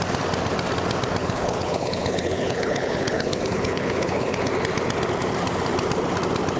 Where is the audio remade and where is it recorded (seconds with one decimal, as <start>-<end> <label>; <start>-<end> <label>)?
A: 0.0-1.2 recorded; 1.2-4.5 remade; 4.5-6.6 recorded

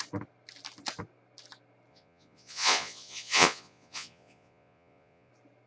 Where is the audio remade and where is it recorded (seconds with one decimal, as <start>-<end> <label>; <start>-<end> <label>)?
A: 0.0-1.9 recorded; 1.9-5.3 remade; 5.3-5.7 recorded

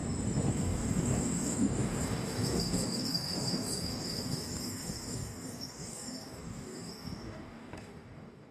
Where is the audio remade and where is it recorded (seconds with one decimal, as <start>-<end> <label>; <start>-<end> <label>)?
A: 0.0-0.5 recorded; 0.5-8.5 remade

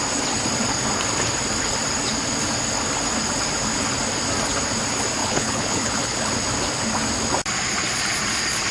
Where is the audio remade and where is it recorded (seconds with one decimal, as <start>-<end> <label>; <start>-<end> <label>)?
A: 0.0-5.2 recorded; 5.2-6.3 remade; 6.3-8.7 recorded

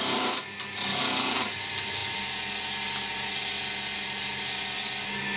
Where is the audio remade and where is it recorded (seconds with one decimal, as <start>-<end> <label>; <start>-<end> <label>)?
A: 0.0-5.4 recorded

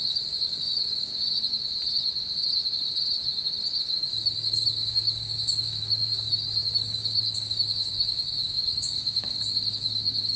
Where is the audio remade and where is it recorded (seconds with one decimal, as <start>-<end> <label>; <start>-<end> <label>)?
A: 0.0-1.1 remade; 1.1-3.8 recorded; 3.8-10.4 remade

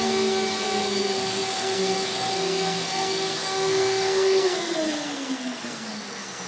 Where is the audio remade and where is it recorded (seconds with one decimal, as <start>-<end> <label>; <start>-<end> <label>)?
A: 0.0-6.5 remade

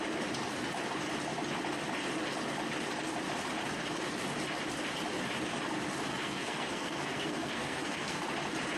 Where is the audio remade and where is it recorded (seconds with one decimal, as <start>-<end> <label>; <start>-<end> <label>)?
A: 0.0-6.1 recorded; 6.1-8.2 remade; 8.2-8.8 recorded